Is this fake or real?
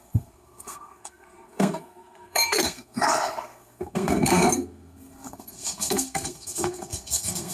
fake